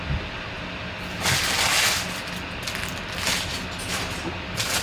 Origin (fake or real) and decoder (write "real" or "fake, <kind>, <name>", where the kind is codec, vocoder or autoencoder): real